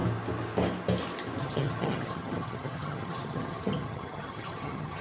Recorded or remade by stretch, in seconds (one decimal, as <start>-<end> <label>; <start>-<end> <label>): 0.0-1.4 recorded; 1.4-5.0 remade